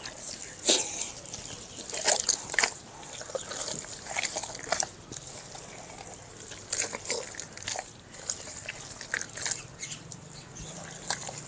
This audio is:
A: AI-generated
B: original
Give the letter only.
B